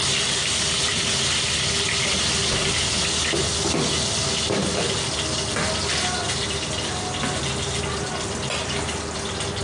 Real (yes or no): yes